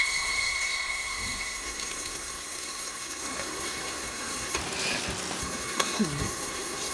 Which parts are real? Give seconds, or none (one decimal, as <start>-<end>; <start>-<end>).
4.6-5.4